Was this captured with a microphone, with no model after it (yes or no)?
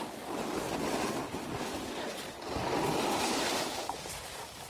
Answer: yes